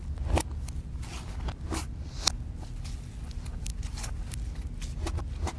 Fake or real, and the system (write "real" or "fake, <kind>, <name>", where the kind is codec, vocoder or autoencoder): real